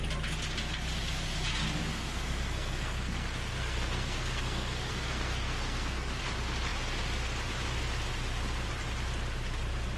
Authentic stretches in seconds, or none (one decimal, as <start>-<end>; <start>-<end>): 0.0-1.8; 6.2-10.0